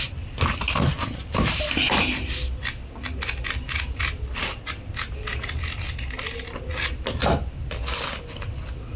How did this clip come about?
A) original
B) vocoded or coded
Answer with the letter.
A